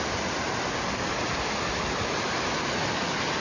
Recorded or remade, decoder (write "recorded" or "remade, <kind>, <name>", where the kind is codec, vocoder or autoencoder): recorded